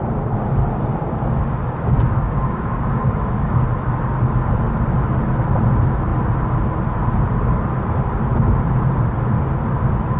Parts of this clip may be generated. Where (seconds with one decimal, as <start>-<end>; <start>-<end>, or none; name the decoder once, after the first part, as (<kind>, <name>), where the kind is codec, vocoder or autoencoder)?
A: 1.6-3.6 (codec, DAC)